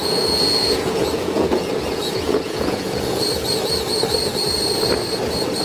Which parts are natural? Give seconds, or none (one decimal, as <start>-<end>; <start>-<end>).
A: 3.2-5.6